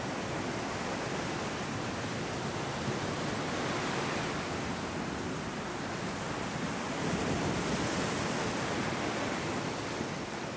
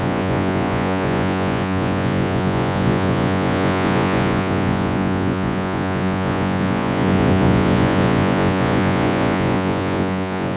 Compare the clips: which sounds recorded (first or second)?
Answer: first